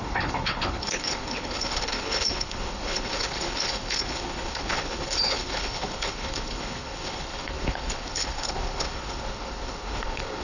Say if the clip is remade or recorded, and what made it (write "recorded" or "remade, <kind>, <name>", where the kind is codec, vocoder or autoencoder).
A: remade, codec, HILCodec